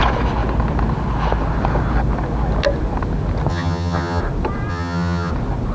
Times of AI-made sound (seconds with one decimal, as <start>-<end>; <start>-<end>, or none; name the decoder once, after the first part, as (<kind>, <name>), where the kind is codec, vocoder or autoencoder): 3.5-4.2 (vocoder, HiFi-GAN); 4.7-5.3